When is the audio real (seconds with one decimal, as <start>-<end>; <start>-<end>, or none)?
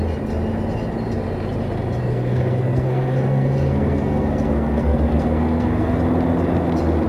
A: 0.0-2.1; 6.0-7.1